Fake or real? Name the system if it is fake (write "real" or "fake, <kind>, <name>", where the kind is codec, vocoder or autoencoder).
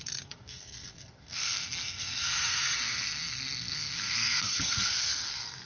fake, codec, SNAC